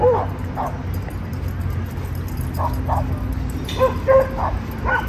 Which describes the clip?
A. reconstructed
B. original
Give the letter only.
B